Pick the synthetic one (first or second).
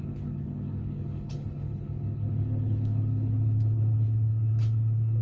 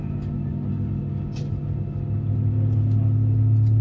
first